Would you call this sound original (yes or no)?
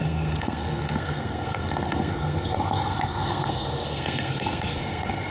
no